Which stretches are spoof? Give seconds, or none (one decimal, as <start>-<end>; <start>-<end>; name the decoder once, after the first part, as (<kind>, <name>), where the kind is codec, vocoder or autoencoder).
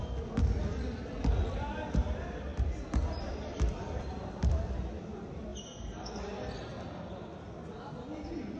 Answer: none